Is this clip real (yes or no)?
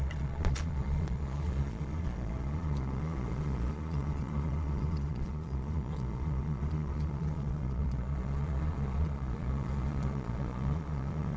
no